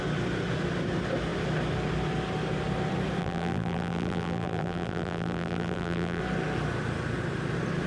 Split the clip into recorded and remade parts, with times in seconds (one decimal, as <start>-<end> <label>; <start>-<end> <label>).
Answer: 0.0-3.2 recorded; 3.2-6.2 remade; 6.2-7.9 recorded